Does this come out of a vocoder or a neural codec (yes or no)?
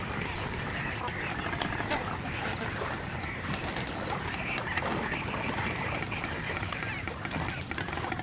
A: no